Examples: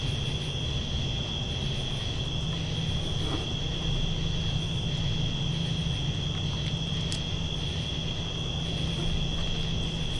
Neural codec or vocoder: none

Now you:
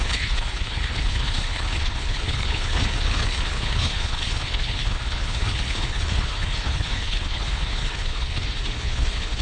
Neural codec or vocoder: codec, HILCodec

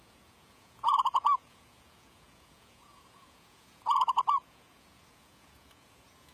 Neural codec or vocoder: vocoder, Vocos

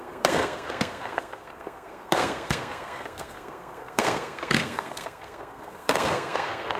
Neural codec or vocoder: codec, SNAC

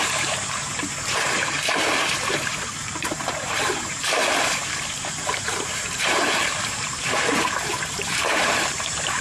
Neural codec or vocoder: vocoder, BigVGAN v2